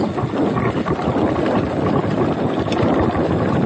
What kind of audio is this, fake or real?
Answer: real